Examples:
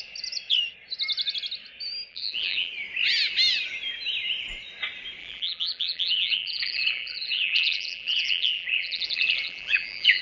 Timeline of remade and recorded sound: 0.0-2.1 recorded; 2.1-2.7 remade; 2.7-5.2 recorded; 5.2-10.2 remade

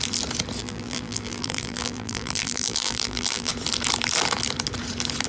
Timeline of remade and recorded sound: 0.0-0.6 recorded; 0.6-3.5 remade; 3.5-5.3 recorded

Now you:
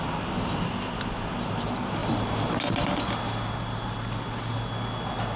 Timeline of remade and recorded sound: 0.0-5.4 recorded